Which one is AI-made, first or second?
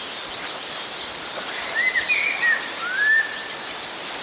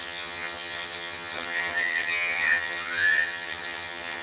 second